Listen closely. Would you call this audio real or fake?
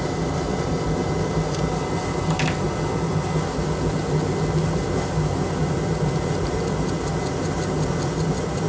real